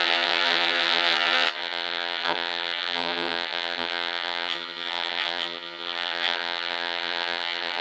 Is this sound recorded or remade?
remade